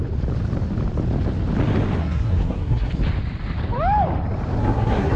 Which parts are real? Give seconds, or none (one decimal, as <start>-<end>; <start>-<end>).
0.0-2.0; 2.9-4.6